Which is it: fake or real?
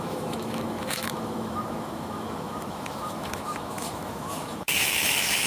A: fake